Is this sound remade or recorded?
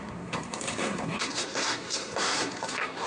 remade